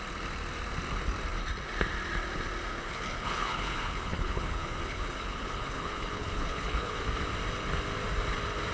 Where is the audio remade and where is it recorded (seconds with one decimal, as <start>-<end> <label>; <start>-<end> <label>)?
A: 0.0-2.7 recorded; 2.7-7.0 remade; 7.0-8.7 recorded